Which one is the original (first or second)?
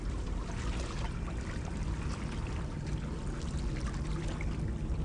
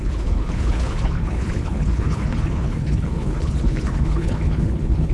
first